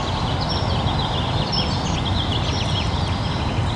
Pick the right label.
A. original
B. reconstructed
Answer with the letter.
A